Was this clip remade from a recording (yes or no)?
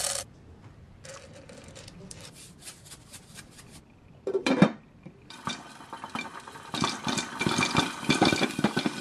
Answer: yes